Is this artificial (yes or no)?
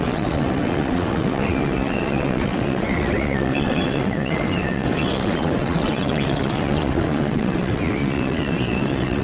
yes